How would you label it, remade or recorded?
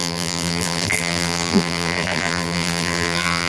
remade